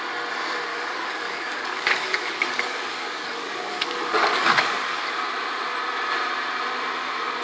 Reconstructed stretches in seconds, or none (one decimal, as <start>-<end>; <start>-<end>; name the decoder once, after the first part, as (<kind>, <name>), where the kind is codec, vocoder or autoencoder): 0.7-5.1 (codec, DAC)